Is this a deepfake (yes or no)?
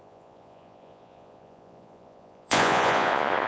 yes